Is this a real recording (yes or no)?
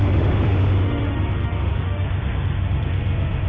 no